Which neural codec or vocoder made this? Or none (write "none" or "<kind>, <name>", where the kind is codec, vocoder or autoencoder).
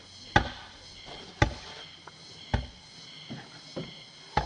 none